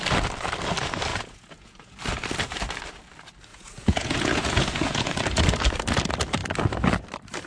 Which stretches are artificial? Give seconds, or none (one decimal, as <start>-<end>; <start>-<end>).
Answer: 1.1-1.9; 3.5-5.2